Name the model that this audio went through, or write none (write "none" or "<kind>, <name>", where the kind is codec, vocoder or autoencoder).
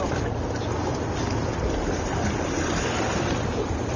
none